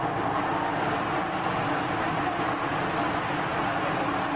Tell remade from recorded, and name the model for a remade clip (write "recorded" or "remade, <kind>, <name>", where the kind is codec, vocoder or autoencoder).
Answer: recorded